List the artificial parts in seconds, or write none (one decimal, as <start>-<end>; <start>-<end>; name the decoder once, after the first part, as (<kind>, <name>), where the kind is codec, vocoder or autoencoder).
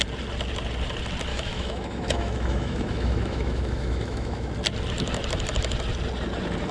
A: 1.3-4.5 (autoencoder, DAC-VAE)